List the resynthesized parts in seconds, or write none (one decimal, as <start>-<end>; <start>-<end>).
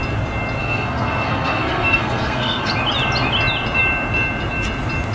0.6-2.7